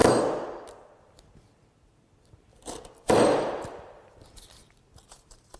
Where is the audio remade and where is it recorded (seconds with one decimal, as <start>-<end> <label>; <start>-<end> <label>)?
0.0-2.5 recorded; 2.5-5.6 remade

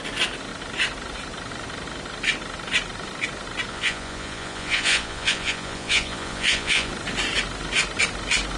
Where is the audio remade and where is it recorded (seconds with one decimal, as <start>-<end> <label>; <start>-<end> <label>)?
0.0-3.7 recorded; 3.7-6.9 remade; 6.9-8.6 recorded

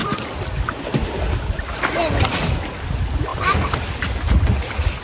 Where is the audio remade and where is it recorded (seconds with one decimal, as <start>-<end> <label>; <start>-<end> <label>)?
0.0-5.0 recorded